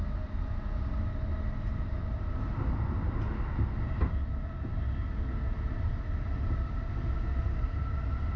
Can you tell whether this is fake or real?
real